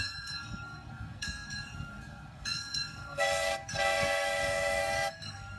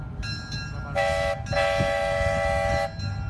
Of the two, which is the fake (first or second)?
first